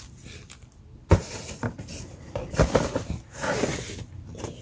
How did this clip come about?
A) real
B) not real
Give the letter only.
A